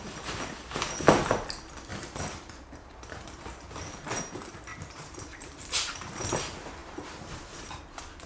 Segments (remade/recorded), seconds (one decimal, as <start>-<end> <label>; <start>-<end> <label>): 0.0-1.9 recorded; 1.9-3.7 remade; 3.7-4.7 recorded; 4.7-6.3 remade; 6.3-6.8 recorded; 6.8-7.8 remade; 7.8-8.3 recorded